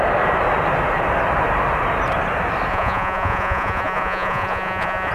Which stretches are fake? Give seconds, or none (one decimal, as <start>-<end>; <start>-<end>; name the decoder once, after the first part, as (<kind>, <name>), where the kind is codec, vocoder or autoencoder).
2.7-5.1 (vocoder, Vocos)